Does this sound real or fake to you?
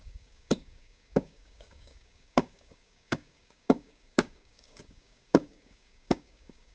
fake